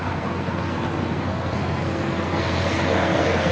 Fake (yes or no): yes